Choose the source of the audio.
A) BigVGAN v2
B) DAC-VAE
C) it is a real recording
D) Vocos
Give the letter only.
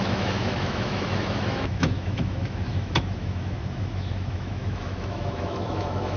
B